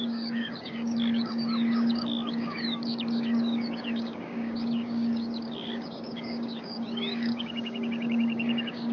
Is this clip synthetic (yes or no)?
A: yes